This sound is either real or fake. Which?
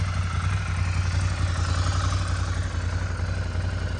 real